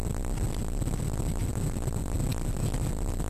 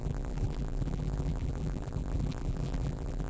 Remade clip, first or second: second